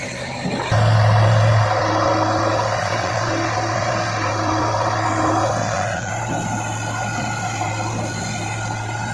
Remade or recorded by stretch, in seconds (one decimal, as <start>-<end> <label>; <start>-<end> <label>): 0.0-2.8 recorded; 2.8-3.3 remade; 3.3-5.6 recorded; 5.6-6.1 remade; 6.1-9.1 recorded